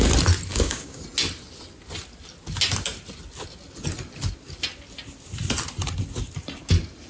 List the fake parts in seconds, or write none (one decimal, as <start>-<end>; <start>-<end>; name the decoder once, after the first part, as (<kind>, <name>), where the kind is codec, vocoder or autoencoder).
0.5-1.0 (codec, DAC)